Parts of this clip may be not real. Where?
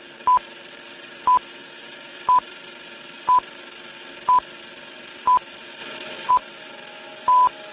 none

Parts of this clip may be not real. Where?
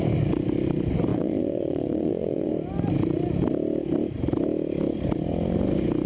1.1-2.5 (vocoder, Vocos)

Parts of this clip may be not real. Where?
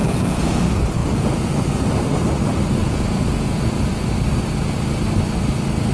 0.0-0.6 (vocoder, Vocos); 1.0-1.6; 2.8-3.9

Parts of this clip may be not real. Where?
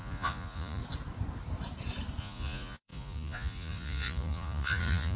0.0-0.8 (vocoder, Vocos); 2.2-5.2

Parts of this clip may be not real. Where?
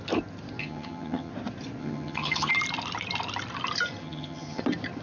0.6-1.3 (vocoder, HiFi-GAN); 1.8-2.5; 4.0-4.6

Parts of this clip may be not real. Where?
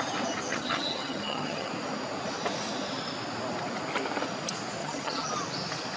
0.5-1.7 (vocoder, HiFi-GAN); 4.8-5.3